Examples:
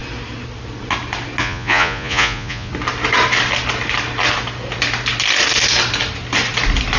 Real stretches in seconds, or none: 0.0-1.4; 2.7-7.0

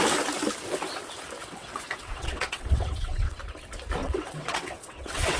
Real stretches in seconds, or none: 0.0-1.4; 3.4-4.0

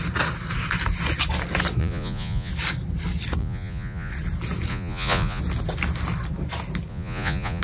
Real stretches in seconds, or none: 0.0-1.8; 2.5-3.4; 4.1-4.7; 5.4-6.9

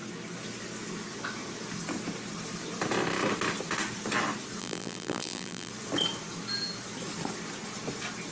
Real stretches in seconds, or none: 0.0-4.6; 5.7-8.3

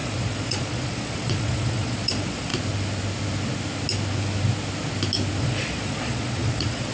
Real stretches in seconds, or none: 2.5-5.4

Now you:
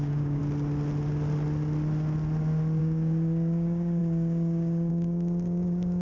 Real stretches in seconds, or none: 0.4-2.8

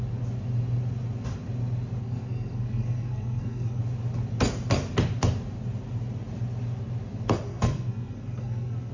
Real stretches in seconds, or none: 0.0-2.0; 3.8-7.5